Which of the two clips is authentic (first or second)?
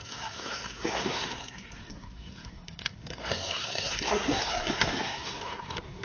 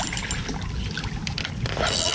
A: second